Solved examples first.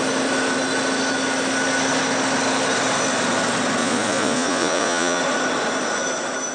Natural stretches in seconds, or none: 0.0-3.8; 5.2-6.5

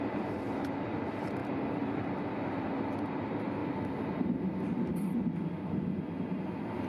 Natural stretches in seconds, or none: 0.0-6.9

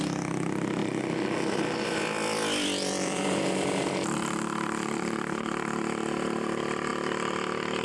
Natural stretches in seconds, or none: 0.0-0.8; 3.4-7.8

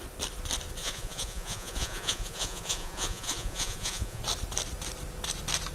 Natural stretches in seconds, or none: 0.0-0.8; 4.2-5.7